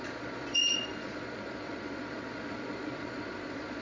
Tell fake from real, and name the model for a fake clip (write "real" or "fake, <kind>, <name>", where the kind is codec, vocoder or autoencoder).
fake, vocoder, Vocos